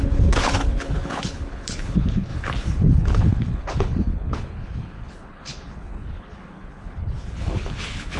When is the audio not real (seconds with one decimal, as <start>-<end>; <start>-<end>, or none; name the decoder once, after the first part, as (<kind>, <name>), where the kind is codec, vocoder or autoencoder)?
0.0-8.2 (codec, HILCodec)